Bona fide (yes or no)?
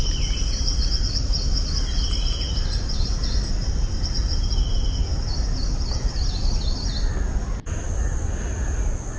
yes